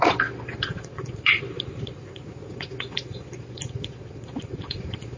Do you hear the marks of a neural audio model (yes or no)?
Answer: yes